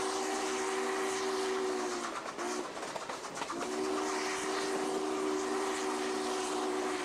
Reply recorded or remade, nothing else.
recorded